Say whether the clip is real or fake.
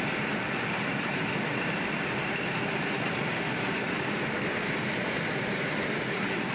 fake